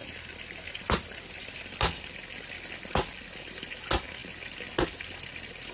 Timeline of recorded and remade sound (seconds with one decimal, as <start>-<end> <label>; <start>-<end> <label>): 0.0-1.6 remade; 1.6-4.2 recorded; 4.2-4.7 remade; 4.7-5.7 recorded